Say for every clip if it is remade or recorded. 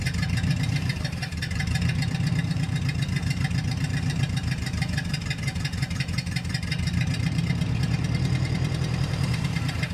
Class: remade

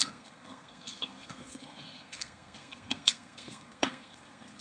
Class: remade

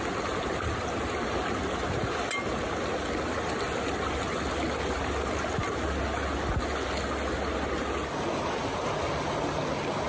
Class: recorded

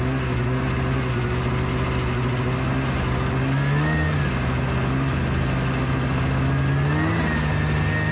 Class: recorded